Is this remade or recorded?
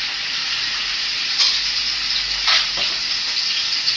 recorded